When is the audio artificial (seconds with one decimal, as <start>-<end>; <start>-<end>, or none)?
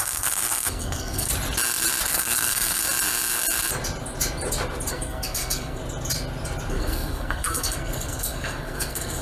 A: 0.0-1.3; 2.1-2.8; 4.9-5.8; 6.7-9.2